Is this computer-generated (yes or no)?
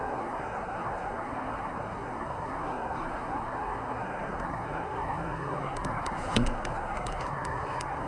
yes